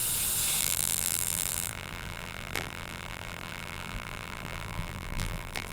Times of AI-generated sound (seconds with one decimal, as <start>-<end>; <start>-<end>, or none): 0.6-5.7